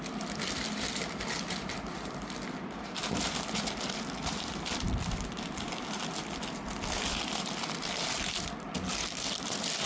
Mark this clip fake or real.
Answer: fake